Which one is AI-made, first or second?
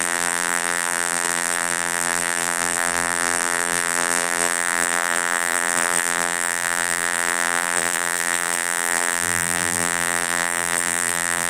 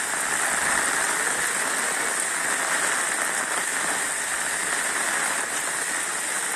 first